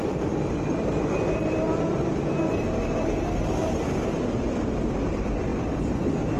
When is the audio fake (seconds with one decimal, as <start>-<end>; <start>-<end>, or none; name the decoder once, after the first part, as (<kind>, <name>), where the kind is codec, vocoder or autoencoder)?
5.5-6.0 (vocoder, BigVGAN v2)